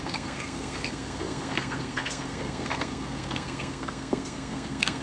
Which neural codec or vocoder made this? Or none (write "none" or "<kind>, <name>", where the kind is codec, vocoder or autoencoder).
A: codec, SNAC